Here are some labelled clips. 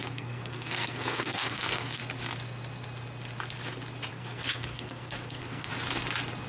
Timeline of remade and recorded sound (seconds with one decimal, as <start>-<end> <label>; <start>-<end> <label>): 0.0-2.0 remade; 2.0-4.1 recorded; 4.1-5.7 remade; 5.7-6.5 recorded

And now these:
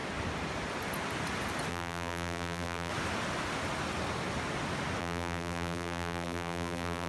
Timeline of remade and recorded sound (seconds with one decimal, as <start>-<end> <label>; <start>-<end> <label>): 0.0-1.7 recorded; 1.7-2.9 remade; 2.9-5.0 recorded; 5.0-7.1 remade

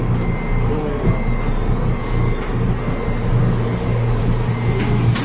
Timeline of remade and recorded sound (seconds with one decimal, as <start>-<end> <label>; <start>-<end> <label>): 0.0-3.4 recorded; 3.4-4.2 remade; 4.2-5.2 recorded

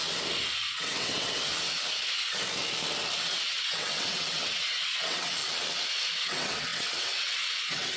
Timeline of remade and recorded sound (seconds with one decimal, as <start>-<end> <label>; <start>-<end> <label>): 0.0-0.7 recorded; 0.7-1.5 remade; 1.5-3.2 recorded; 3.2-5.4 remade; 5.4-6.2 recorded; 6.2-8.0 remade